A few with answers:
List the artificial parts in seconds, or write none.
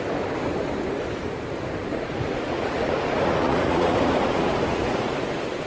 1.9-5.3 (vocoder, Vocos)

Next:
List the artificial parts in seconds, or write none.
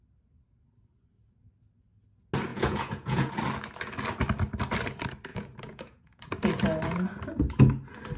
2.5-3.3 (vocoder, Vocos); 5.3-6.3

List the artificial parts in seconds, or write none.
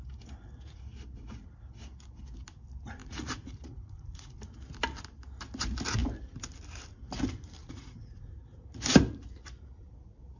3.0-4.4 (vocoder, Vocos); 7.6-8.7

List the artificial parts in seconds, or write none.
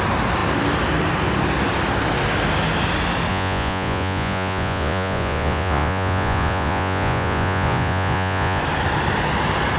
3.3-8.6 (vocoder, Vocos)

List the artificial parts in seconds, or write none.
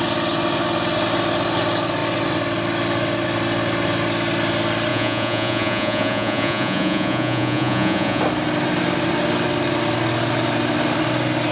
4.9-8.2 (vocoder, Vocos)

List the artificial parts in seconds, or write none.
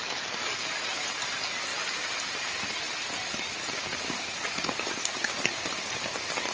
3.9-5.4 (vocoder, Vocos)